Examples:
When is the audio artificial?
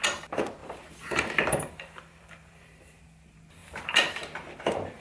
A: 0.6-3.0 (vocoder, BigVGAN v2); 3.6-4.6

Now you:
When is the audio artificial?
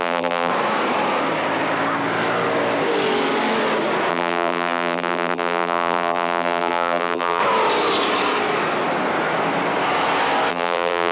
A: 0.0-0.5 (vocoder, BigVGAN v2); 4.1-7.4; 10.5-11.1